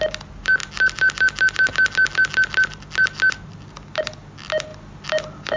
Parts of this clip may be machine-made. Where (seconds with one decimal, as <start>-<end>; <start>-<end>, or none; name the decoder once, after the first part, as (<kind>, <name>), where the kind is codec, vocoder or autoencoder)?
none